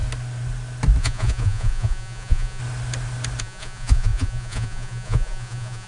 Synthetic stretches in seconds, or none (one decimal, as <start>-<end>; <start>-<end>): 1.0-2.6; 3.4-5.9